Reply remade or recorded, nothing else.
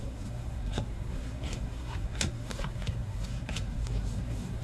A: remade